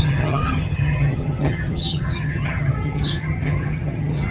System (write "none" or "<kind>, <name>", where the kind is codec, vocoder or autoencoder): vocoder, HiFi-GAN